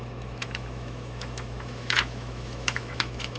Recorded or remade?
remade